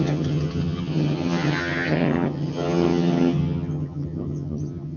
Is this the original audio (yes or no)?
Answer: no